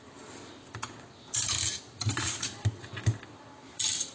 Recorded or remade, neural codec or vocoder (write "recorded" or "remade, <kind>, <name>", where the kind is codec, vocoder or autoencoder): recorded